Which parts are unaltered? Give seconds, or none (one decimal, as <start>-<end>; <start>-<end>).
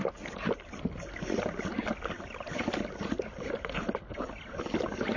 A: 0.0-5.2